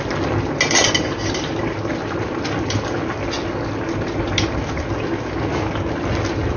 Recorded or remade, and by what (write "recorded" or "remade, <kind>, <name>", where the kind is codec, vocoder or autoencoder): recorded